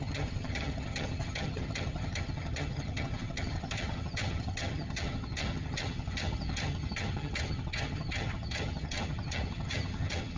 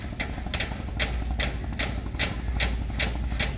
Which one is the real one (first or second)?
second